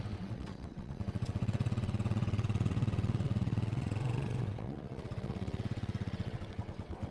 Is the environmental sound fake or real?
fake